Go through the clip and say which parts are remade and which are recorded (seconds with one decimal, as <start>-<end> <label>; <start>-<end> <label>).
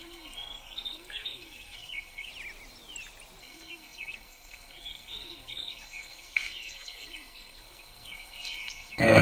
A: 0.0-2.3 remade; 2.3-3.4 recorded; 3.4-9.2 remade